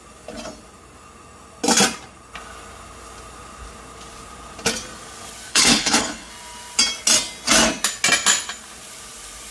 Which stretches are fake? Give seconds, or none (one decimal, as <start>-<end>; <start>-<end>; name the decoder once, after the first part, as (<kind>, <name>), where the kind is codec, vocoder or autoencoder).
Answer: 5.5-6.3 (codec, HILCodec)